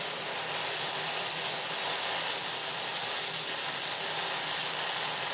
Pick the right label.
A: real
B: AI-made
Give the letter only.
A